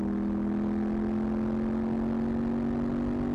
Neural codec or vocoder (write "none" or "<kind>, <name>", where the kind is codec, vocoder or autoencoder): none